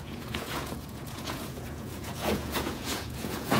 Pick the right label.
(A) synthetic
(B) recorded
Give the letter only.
A